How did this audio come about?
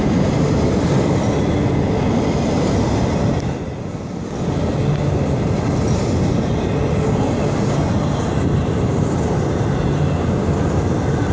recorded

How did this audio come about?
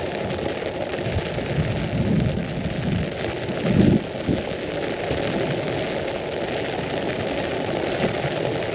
recorded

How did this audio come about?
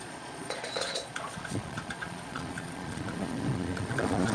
remade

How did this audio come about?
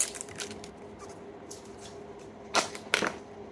recorded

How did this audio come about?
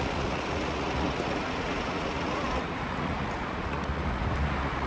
remade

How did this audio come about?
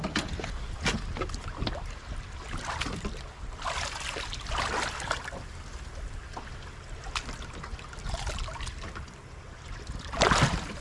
recorded